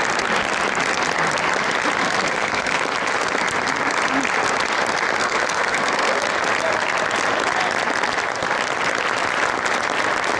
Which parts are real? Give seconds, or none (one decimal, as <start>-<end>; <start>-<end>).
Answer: 0.0-2.0; 2.8-5.2; 6.2-10.4